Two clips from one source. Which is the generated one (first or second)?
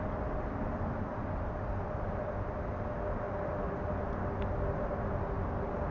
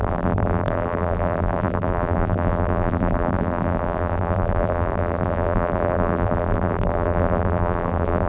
second